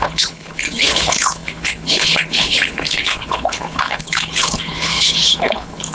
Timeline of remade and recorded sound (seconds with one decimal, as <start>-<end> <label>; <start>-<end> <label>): 0.0-5.9 remade